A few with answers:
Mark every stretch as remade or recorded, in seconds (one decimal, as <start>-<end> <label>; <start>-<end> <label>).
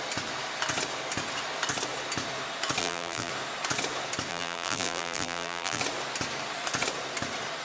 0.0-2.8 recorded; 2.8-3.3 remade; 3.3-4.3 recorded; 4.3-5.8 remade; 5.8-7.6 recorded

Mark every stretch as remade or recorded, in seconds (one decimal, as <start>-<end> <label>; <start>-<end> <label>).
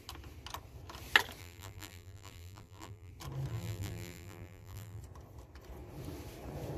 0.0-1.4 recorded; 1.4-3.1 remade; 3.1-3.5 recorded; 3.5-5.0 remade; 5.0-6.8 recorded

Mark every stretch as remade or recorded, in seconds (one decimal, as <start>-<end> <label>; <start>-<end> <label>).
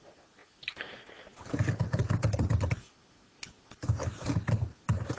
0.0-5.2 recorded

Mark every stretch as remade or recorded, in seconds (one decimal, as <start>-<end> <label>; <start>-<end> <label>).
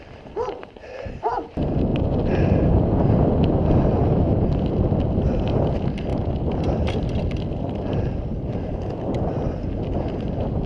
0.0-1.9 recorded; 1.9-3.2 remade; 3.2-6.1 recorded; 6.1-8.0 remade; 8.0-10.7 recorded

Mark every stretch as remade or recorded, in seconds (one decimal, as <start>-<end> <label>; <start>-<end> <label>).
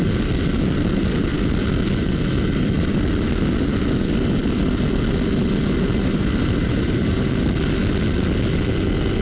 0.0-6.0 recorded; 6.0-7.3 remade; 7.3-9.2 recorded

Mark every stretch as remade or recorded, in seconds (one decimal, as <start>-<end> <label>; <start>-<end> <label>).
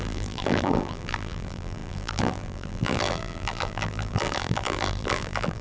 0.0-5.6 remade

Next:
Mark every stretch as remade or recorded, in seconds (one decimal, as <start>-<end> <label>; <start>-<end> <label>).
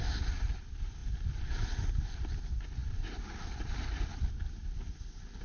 0.0-1.0 recorded; 1.0-1.9 remade; 1.9-5.4 recorded